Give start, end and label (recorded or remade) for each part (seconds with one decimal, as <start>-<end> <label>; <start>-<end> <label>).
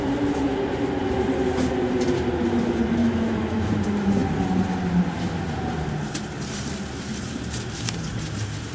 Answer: 0.0-3.0 recorded; 3.0-3.7 remade; 3.7-8.7 recorded